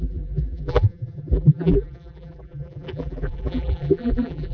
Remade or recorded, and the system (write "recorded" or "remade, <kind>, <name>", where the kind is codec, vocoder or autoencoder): remade, vocoder, BigVGAN v2